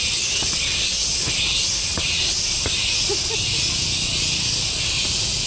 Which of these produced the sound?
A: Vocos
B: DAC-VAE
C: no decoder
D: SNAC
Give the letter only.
C